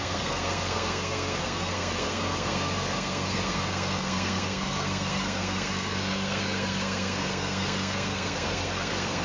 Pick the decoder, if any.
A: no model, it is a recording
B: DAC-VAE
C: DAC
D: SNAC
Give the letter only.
D